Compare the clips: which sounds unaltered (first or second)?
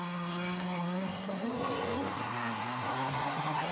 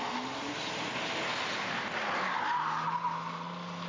second